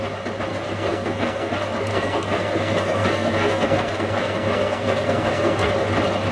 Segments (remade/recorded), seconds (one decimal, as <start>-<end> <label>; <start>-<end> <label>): 0.0-0.5 recorded; 0.5-1.5 remade; 1.5-1.9 recorded; 1.9-5.7 remade; 5.7-6.3 recorded